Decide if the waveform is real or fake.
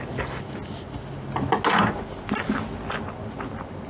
real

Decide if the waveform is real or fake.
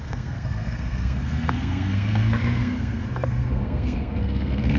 fake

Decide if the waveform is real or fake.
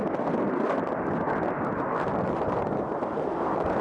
real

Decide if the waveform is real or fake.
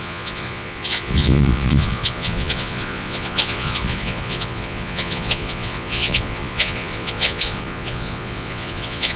fake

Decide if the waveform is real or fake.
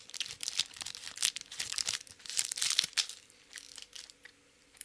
real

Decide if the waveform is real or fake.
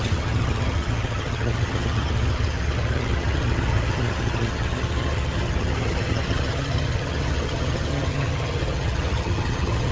fake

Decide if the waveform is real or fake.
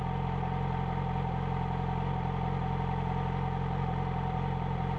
real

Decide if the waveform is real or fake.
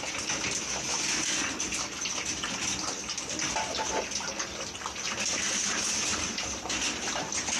real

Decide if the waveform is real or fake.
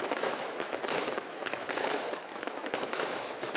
fake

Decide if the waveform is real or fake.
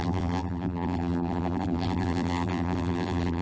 fake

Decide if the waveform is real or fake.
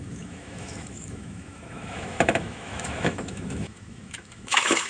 fake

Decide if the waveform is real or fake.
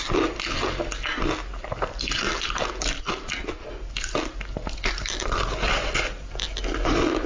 real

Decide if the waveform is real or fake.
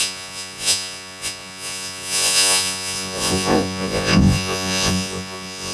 fake